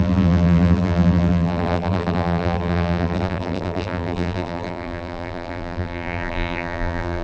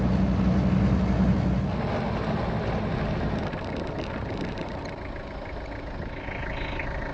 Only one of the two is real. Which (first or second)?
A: second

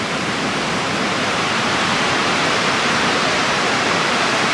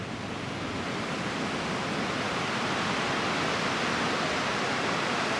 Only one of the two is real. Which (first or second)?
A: second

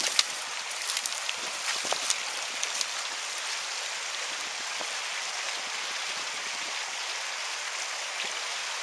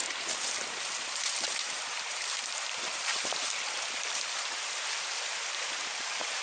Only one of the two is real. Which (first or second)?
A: first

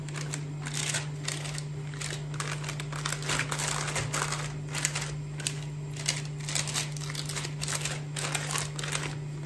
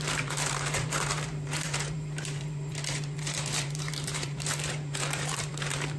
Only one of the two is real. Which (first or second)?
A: first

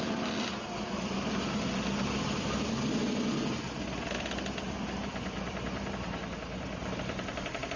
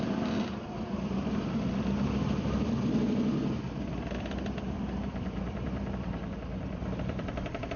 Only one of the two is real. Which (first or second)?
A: first